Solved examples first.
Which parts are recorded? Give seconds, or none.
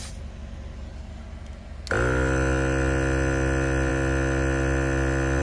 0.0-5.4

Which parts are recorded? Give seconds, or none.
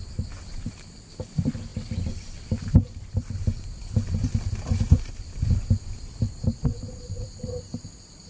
none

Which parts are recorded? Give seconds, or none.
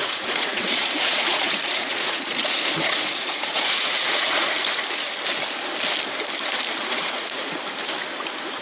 4.5-6.8; 7.6-8.6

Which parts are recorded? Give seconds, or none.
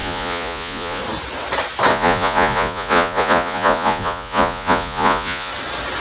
1.0-1.9; 5.5-6.0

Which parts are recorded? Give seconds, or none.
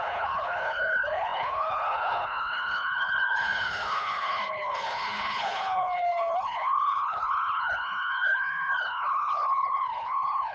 none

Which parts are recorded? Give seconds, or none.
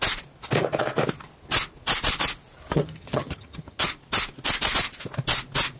0.0-2.7; 3.9-5.8